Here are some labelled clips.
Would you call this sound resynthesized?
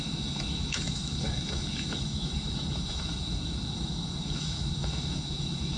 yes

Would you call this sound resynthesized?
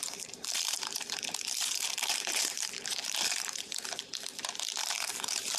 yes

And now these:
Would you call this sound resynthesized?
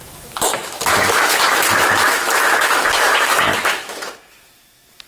yes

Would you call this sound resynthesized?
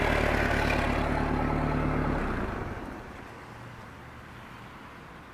no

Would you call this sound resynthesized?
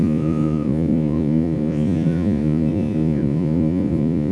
yes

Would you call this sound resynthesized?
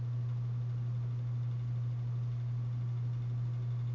no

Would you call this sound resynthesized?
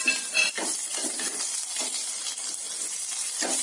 yes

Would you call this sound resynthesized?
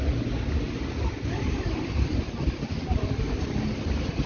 no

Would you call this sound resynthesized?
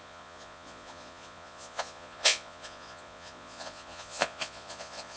yes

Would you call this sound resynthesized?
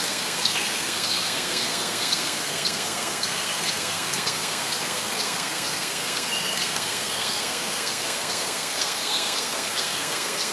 yes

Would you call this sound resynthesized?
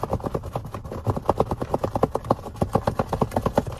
no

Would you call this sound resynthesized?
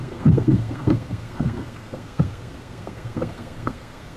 yes